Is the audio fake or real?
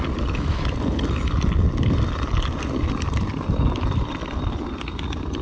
real